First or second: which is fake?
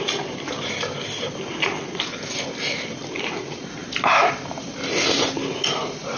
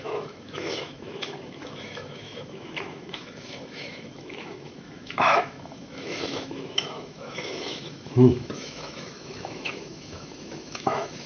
second